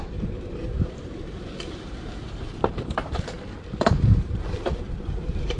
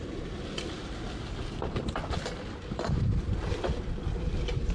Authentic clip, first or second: second